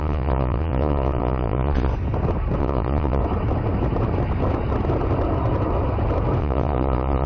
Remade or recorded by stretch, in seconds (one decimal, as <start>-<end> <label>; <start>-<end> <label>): 0.0-1.9 remade; 1.9-2.6 recorded; 2.6-3.2 remade; 3.2-6.4 recorded; 6.4-7.3 remade